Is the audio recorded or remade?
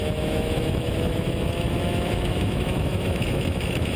remade